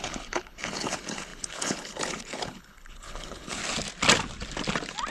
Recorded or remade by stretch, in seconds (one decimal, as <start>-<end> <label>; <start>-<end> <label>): 0.0-3.6 remade; 3.6-5.1 recorded

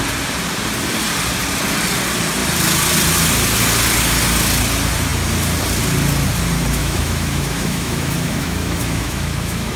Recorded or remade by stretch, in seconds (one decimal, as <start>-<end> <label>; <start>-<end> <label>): 0.0-6.8 recorded; 6.8-9.8 remade

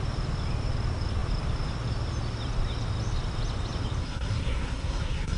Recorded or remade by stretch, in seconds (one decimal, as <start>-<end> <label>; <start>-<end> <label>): 0.0-4.0 recorded; 4.0-5.4 remade

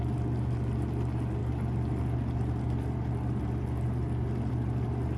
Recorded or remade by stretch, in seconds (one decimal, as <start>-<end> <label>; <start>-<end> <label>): 0.0-5.2 recorded

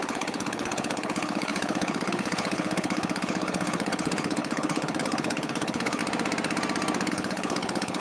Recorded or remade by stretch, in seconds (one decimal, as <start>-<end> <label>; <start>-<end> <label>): 0.0-6.0 remade; 6.0-7.1 recorded; 7.1-8.0 remade

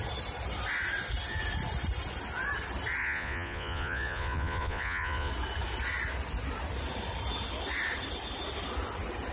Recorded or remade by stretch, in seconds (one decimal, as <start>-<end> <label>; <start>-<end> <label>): 0.0-3.0 recorded; 3.0-5.3 remade; 5.3-9.3 recorded